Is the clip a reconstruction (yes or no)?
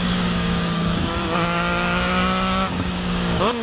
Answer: yes